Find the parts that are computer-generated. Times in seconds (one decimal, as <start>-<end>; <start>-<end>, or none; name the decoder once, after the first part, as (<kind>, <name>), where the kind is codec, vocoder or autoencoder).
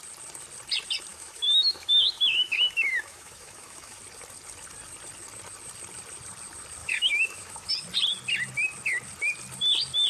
1.1-4.0 (autoencoder, DAC-VAE); 6.8-7.7